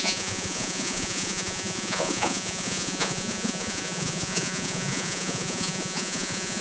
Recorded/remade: remade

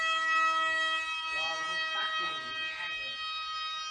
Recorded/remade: recorded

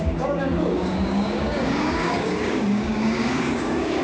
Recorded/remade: remade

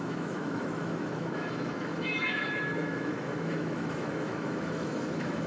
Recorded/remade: remade